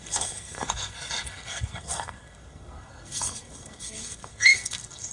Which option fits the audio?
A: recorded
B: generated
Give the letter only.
B